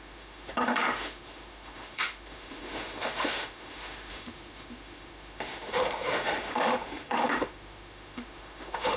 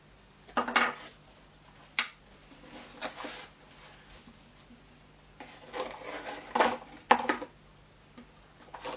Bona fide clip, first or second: second